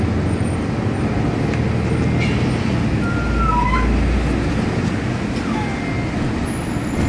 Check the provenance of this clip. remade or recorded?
recorded